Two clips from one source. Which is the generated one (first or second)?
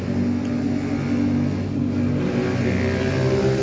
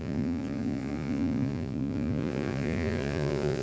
second